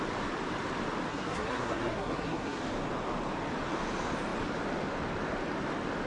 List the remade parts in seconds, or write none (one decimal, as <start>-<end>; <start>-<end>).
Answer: 1.1-2.6

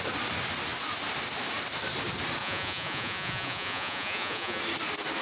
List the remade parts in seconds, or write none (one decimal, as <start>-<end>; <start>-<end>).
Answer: 2.4-4.6

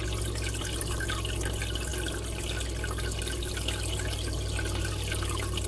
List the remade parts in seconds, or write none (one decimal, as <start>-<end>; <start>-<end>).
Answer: none